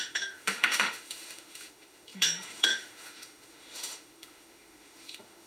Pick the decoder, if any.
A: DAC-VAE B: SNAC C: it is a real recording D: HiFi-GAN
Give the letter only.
A